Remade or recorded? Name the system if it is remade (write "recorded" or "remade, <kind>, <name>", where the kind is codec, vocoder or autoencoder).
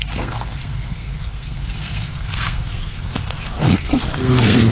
remade, codec, SNAC